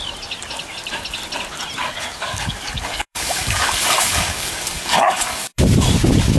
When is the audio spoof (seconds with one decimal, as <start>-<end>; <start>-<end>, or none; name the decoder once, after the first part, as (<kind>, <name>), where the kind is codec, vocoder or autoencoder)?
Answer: 1.8-5.6 (codec, DAC)